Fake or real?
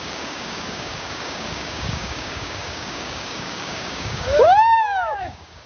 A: fake